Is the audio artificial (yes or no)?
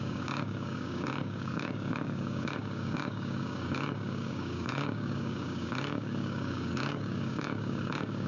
yes